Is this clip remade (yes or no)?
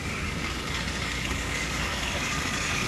yes